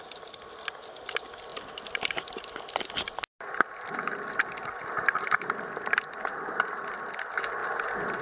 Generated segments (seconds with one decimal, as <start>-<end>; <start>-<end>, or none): none